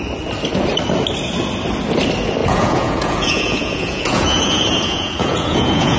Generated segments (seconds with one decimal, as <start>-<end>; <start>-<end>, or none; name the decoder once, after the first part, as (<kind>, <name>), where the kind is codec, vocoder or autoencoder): 2.4-6.0 (vocoder, Vocos)